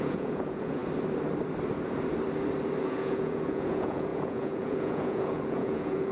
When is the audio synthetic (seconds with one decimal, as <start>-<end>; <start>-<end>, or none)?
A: 0.0-0.8; 2.8-6.1